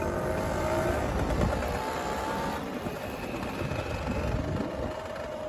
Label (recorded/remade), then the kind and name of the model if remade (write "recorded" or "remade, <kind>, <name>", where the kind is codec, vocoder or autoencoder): recorded